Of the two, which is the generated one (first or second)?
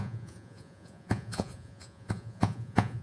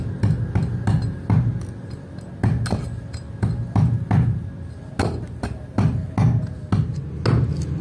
first